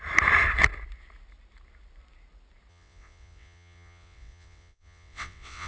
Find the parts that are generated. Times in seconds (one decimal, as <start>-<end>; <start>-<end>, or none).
2.7-5.7